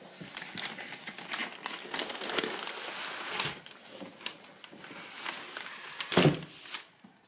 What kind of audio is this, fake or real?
real